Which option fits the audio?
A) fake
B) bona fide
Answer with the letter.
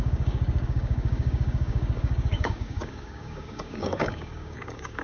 A